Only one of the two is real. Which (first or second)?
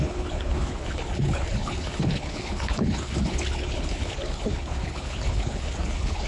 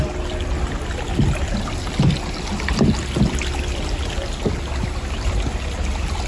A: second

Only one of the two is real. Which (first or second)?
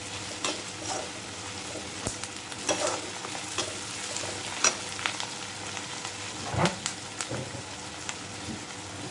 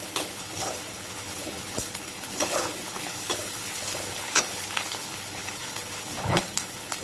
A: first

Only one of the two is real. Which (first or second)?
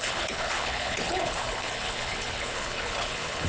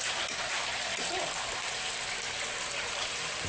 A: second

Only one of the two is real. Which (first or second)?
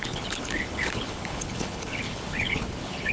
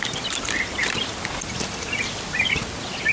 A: second